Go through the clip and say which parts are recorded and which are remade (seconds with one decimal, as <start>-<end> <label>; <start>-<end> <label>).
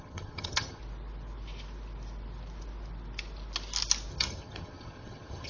0.0-0.8 remade; 0.8-4.1 recorded; 4.1-5.5 remade